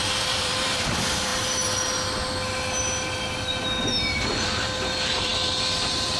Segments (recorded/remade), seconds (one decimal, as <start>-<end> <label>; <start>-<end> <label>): 0.0-1.3 remade; 1.3-3.9 recorded; 3.9-6.2 remade

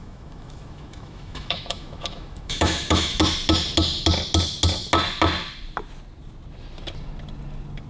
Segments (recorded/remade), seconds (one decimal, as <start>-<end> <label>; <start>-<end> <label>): 0.0-3.2 remade; 3.2-7.9 recorded

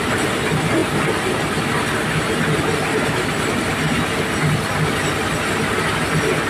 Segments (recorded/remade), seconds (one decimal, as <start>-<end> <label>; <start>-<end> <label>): 0.0-6.5 recorded